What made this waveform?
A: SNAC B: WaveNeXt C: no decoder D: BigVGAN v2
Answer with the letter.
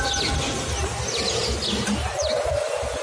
C